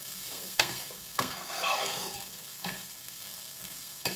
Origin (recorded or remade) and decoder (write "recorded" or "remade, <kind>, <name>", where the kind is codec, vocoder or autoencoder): remade, codec, SNAC